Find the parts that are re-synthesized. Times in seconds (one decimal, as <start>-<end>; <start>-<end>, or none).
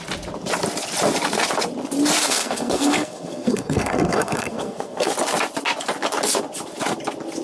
2.2-5.1